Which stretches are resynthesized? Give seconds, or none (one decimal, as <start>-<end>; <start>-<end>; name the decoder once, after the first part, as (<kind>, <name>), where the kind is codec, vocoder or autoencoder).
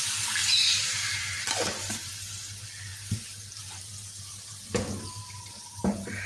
0.4-2.1 (vocoder, BigVGAN v2); 2.9-4.5; 5.2-6.3